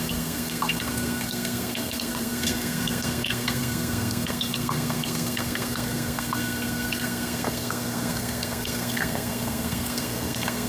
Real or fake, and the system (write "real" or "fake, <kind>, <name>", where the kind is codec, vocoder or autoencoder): fake, codec, SNAC